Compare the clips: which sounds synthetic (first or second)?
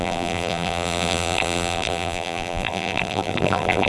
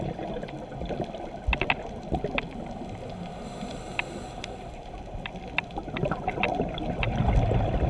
first